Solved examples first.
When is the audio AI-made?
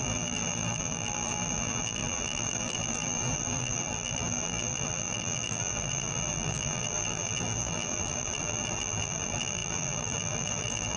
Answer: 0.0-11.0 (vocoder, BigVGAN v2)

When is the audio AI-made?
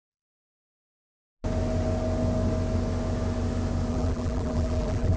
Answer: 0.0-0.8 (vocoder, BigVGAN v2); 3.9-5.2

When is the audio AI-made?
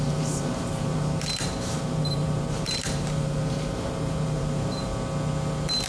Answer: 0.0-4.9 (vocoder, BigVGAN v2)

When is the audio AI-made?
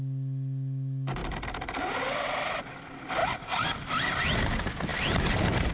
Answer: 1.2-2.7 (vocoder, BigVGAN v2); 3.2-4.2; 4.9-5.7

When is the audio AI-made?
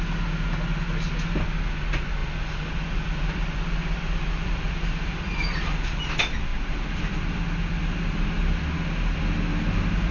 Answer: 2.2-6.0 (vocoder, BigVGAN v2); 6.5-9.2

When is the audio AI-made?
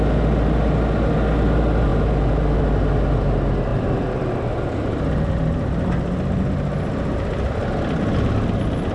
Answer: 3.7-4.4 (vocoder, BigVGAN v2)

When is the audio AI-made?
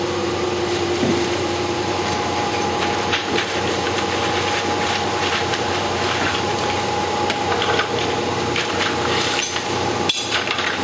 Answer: 0.0-10.8 (vocoder, BigVGAN v2)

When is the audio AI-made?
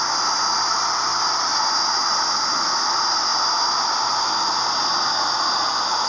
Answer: none